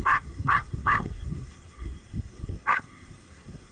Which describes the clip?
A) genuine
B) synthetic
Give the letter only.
B